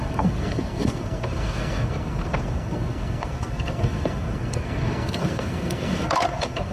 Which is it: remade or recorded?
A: remade